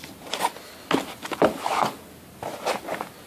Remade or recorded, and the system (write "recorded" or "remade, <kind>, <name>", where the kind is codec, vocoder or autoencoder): recorded